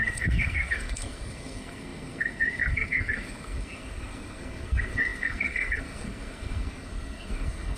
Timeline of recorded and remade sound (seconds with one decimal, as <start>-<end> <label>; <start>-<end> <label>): 0.0-7.8 remade